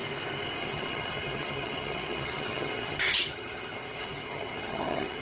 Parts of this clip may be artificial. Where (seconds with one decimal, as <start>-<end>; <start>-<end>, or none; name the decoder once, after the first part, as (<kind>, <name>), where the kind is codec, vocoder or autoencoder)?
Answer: 0.6-5.2 (vocoder, HiFi-GAN)